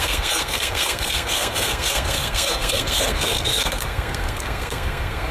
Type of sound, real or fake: fake